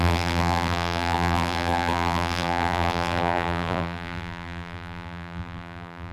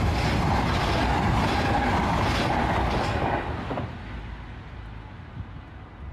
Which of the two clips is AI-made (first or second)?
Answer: first